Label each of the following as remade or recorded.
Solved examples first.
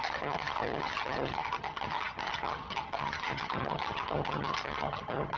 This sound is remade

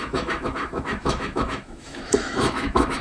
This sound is remade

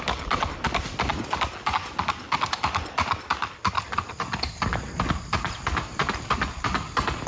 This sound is recorded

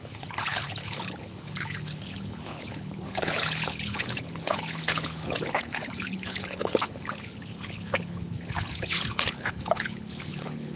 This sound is remade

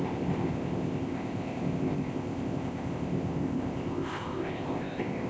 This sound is remade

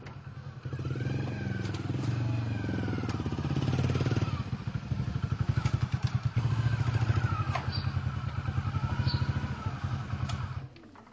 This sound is recorded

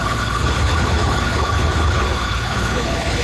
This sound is remade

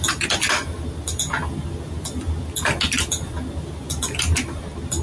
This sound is recorded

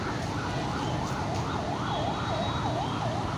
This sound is recorded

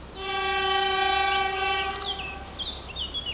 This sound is recorded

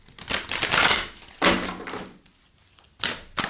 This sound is recorded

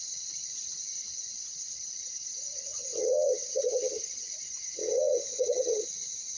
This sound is remade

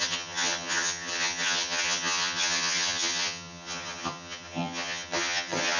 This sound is remade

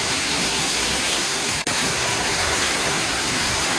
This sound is remade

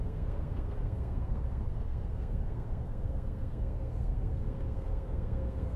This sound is remade